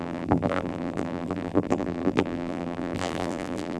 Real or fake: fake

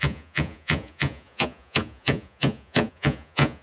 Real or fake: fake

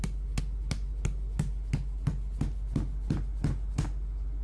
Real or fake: real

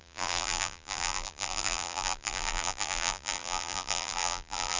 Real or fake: fake